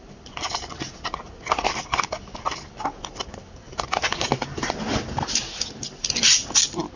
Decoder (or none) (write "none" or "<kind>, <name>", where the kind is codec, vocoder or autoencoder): none